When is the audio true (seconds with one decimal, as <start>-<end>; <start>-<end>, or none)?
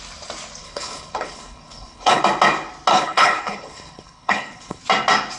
0.0-0.6; 2.2-2.9; 4.8-5.4